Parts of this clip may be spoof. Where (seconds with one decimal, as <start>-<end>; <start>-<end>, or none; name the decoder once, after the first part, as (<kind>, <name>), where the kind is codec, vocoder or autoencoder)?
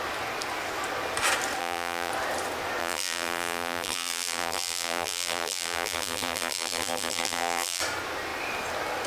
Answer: 1.6-2.1 (vocoder, BigVGAN v2); 2.8-7.8